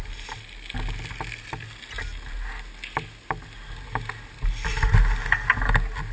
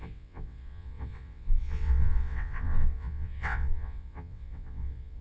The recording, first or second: first